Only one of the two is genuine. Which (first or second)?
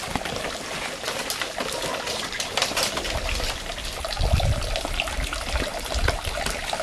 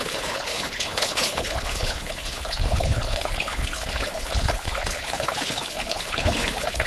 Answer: first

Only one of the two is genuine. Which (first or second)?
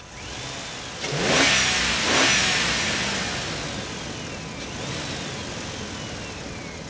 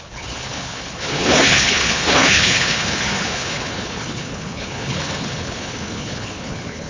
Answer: first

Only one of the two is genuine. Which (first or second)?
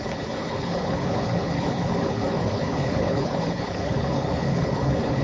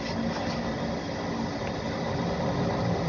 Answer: second